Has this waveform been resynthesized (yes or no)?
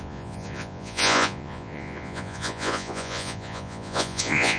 yes